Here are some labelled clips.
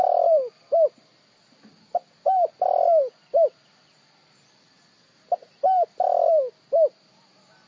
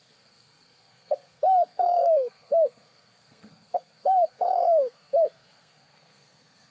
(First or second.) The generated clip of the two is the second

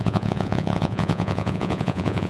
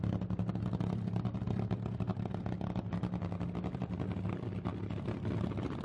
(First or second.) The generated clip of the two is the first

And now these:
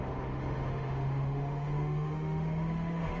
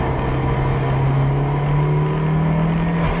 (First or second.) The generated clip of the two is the first